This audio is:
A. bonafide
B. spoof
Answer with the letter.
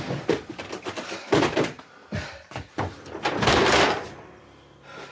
B